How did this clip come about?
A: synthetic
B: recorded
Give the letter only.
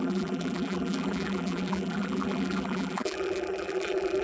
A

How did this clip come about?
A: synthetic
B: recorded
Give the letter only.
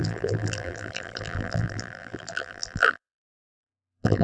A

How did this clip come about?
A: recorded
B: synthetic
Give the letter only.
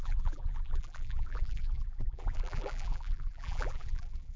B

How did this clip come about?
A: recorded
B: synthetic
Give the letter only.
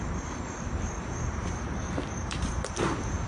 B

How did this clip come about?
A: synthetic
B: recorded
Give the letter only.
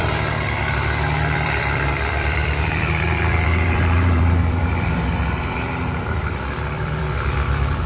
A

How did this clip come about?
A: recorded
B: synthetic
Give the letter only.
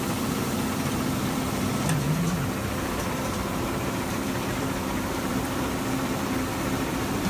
B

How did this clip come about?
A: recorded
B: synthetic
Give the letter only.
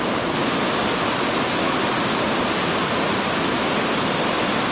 A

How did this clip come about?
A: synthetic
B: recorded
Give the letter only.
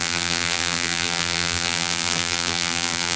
A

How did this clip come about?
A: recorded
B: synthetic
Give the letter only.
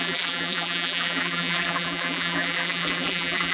B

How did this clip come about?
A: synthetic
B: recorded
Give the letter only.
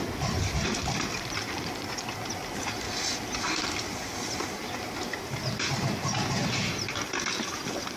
B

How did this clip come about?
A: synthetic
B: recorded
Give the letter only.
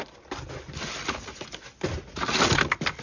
A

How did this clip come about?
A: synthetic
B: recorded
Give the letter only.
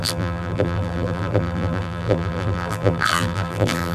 A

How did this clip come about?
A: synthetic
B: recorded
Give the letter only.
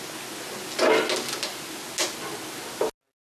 B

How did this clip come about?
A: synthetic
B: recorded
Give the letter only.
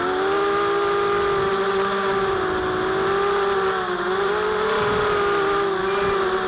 B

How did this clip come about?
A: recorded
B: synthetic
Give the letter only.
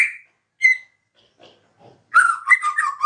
A